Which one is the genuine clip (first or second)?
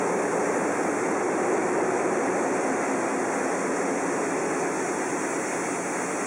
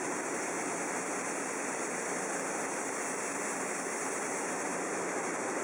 first